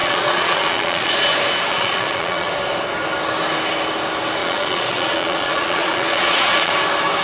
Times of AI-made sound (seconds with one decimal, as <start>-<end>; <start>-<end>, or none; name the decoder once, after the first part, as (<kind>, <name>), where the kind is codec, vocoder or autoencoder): 0.0-1.1 (vocoder, Vocos); 1.7-2.5; 4.4-6.7